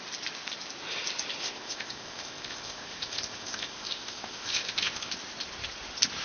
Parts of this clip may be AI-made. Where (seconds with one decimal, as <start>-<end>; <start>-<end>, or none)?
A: 1.4-5.1